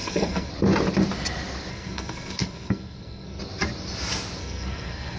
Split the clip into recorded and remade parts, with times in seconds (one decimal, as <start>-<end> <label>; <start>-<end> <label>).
0.0-0.5 remade; 0.5-1.7 recorded; 1.7-3.4 remade; 3.4-4.4 recorded; 4.4-5.2 remade

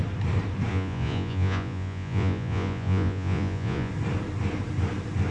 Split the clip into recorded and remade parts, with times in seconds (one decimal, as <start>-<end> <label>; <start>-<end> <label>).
0.0-0.7 recorded; 0.7-3.9 remade; 3.9-5.3 recorded

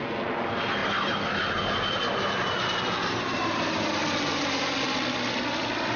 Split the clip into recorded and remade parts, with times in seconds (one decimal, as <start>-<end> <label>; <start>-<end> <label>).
0.0-6.0 recorded

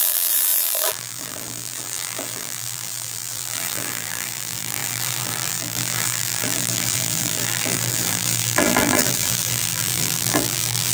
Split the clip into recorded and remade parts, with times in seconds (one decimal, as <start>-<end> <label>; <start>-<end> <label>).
0.0-10.9 remade

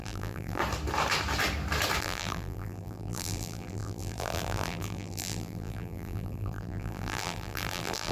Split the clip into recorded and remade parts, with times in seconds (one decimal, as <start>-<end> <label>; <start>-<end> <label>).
0.0-0.6 remade; 0.6-2.0 recorded; 2.0-8.1 remade